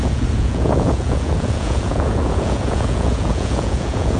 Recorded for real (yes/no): no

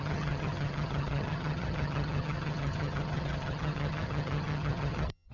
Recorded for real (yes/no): no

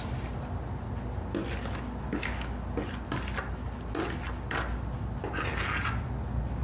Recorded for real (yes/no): yes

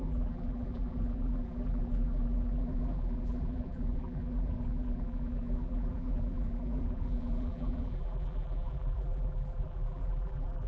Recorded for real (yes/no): no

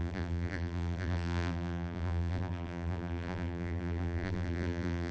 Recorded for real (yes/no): no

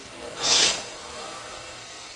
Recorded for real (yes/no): no